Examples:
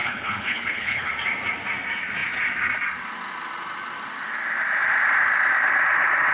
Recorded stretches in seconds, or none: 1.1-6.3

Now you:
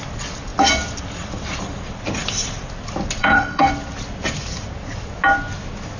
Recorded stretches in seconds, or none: 0.0-3.2; 3.7-6.0

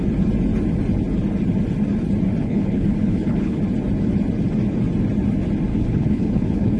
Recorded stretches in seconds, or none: 0.0-2.4; 3.6-5.7

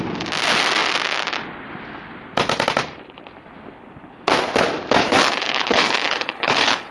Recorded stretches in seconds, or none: 0.0-5.0

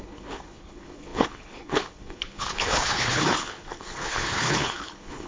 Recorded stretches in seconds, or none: none

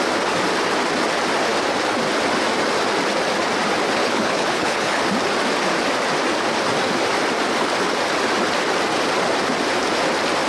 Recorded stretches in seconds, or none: 0.0-4.0; 5.0-10.5

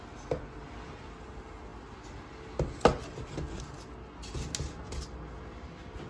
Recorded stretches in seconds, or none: 0.0-6.1